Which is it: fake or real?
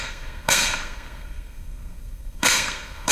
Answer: fake